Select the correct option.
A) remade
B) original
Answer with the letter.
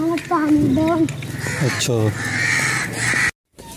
B